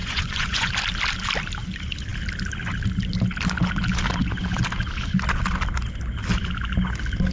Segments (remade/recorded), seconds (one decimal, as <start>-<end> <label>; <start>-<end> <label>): 0.0-0.7 remade; 0.7-7.3 recorded